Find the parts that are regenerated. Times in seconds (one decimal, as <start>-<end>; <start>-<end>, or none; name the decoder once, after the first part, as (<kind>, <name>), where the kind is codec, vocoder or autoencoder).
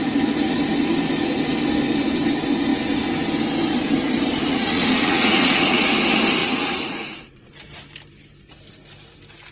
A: 4.5-5.9 (vocoder, Vocos); 6.4-7.5